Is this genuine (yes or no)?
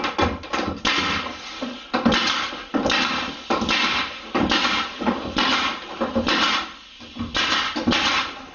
yes